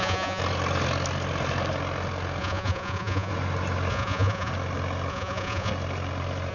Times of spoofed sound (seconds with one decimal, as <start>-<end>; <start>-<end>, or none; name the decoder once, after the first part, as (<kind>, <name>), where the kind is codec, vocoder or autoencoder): 0.0-0.4 (vocoder, Vocos); 2.4-3.3; 3.9-4.5; 5.1-5.7